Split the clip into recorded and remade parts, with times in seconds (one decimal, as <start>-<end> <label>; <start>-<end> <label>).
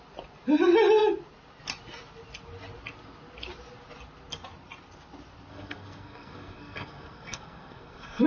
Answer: 0.0-5.5 recorded; 5.5-8.3 remade